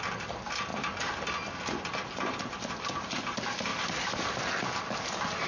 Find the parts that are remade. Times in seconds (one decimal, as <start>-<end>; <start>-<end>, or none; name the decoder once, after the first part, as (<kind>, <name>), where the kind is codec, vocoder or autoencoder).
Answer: none